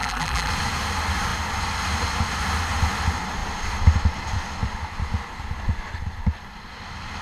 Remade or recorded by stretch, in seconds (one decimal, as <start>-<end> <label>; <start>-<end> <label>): 0.0-0.5 remade; 0.5-7.2 recorded